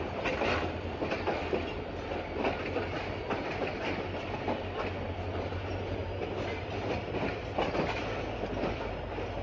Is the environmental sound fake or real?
real